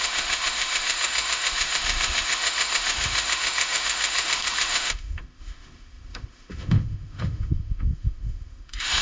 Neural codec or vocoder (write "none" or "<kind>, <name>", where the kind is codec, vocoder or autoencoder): autoencoder, DAC-VAE